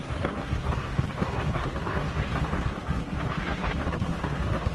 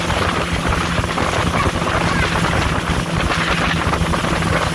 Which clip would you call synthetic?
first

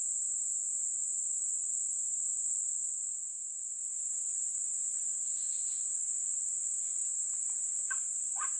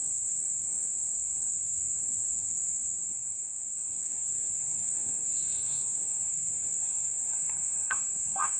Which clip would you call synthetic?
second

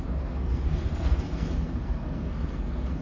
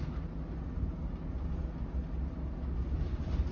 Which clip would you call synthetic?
first